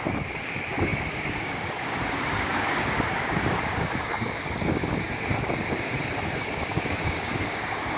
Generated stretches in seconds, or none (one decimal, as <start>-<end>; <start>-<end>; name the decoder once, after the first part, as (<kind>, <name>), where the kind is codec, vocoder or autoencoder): 0.0-8.0 (codec, DAC)